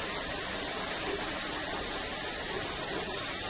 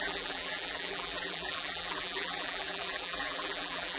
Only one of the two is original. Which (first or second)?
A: first